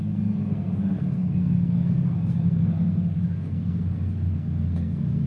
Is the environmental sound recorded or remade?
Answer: remade